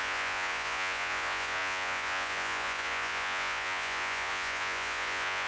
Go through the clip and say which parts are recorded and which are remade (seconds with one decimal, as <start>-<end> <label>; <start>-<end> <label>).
0.0-5.5 remade